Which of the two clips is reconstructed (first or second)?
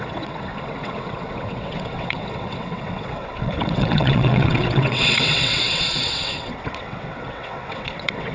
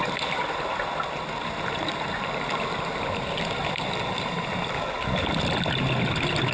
first